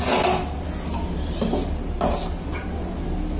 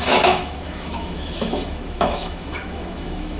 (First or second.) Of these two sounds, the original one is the first